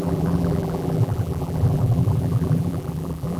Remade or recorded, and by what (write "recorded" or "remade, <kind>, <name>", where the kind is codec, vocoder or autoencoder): remade, vocoder, BigVGAN v2